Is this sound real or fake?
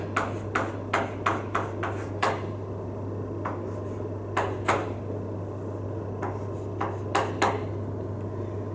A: real